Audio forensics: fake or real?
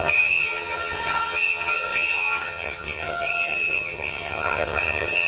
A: fake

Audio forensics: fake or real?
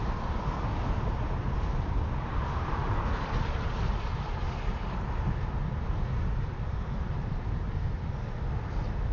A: real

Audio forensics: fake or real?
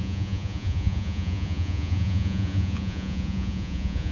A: fake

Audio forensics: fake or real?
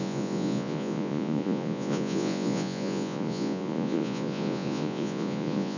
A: fake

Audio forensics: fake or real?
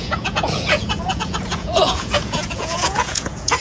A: fake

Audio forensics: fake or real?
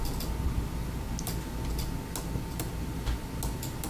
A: real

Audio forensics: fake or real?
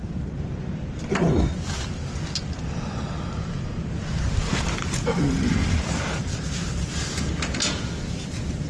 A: real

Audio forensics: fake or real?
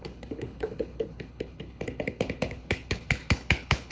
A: fake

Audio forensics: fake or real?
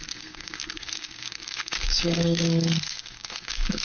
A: fake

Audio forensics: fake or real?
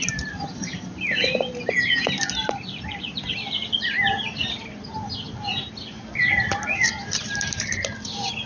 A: fake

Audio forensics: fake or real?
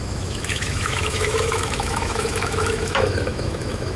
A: fake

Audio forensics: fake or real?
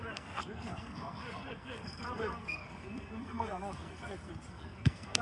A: fake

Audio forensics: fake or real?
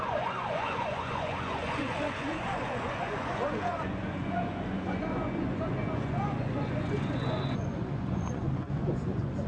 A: fake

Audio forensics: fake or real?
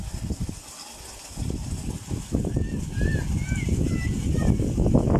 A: real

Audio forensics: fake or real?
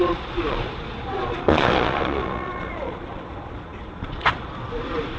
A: fake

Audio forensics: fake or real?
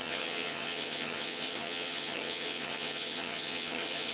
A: fake